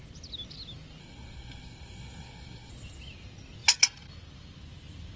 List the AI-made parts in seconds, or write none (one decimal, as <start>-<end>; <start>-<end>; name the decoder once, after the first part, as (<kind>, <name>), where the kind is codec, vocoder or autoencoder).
1.0-2.7 (codec, SNAC)